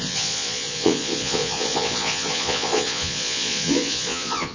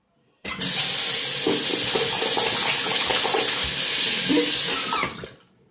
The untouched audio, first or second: second